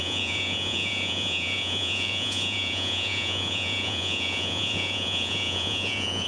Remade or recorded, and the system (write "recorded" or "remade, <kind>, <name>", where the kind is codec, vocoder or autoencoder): remade, vocoder, Vocos